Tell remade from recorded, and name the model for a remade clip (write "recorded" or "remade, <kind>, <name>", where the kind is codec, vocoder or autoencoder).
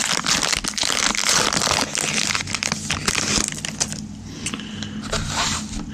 recorded